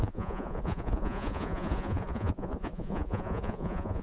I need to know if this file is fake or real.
fake